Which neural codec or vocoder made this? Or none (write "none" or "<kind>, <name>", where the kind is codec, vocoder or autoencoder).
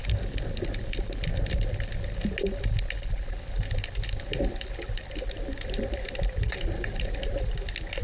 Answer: none